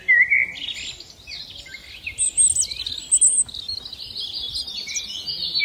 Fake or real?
real